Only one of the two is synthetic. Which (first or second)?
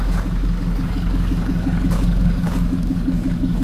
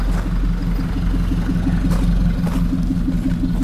first